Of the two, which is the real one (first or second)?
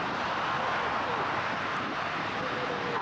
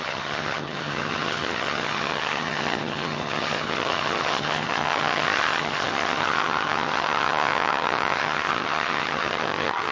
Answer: first